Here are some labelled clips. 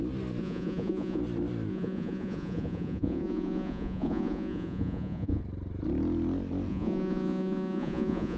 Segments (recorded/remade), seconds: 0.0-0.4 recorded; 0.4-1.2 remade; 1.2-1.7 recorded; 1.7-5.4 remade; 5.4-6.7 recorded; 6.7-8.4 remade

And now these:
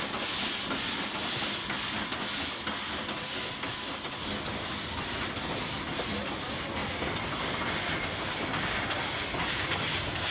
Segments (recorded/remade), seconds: 0.0-10.3 recorded